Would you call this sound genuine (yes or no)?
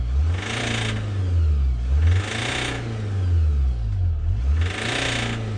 yes